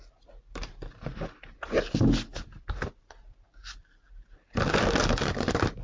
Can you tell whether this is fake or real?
real